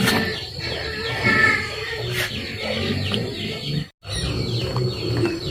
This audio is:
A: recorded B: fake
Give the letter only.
A